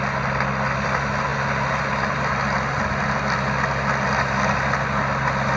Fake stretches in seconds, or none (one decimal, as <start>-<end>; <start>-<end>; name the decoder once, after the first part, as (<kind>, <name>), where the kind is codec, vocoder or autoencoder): none